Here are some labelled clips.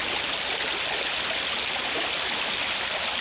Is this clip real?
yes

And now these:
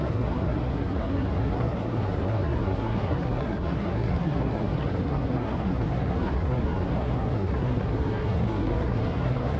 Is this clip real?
no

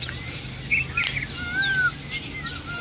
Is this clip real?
yes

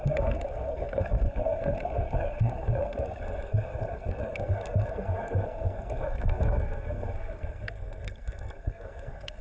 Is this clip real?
no